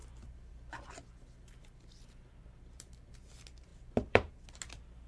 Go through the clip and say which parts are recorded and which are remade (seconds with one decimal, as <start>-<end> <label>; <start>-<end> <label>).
0.0-3.1 remade; 3.1-3.7 recorded; 3.7-4.3 remade; 4.3-5.1 recorded